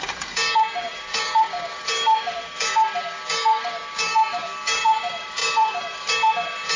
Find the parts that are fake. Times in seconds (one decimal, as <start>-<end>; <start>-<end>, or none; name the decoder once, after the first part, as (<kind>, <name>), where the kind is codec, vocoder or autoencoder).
0.0-6.8 (codec, DAC)